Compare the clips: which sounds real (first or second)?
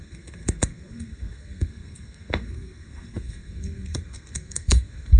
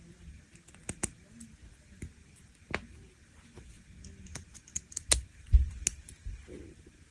second